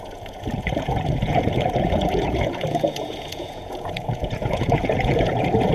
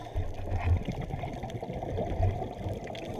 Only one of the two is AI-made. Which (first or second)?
first